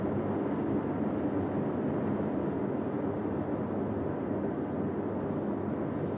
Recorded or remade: recorded